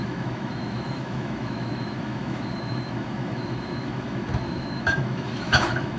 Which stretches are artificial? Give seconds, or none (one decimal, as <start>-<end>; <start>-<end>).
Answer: 0.0-6.0